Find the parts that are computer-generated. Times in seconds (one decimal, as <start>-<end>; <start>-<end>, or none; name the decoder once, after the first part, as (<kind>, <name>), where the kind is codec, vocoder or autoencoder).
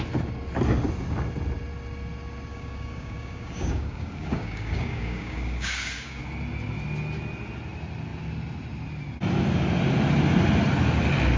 2.5-6.2 (codec, DAC)